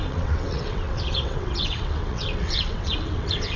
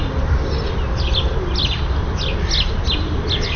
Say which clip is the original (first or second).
second